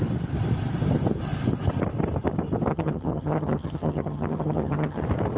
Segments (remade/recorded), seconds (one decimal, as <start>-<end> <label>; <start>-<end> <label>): 0.0-2.7 recorded; 2.7-5.0 remade; 5.0-5.4 recorded